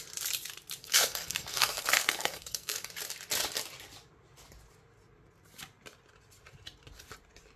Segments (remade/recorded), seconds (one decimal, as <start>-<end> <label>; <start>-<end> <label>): 0.0-0.8 recorded; 0.8-2.9 remade; 2.9-7.6 recorded